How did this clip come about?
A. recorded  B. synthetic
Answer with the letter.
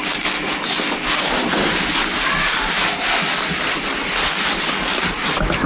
A